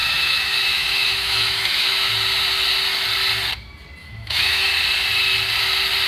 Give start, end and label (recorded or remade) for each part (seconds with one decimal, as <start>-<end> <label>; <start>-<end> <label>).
0.0-2.1 remade; 2.1-4.0 recorded; 4.0-4.7 remade; 4.7-6.1 recorded